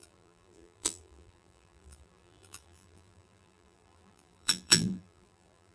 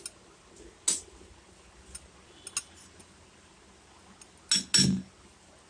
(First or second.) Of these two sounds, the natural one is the second